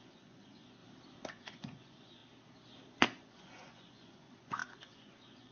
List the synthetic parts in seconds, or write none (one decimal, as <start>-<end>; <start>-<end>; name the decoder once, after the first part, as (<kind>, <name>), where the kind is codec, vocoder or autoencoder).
0.0-0.8 (vocoder, Vocos); 1.3-2.2; 2.9-5.5